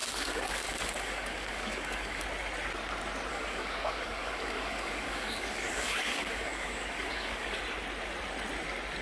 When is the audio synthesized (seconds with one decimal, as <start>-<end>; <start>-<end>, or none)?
0.0-2.2; 3.3-7.6